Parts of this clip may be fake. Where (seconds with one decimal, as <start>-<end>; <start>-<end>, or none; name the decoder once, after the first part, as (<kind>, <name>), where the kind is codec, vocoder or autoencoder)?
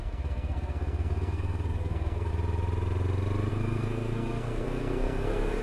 0.0-2.3 (codec, SNAC); 3.5-5.6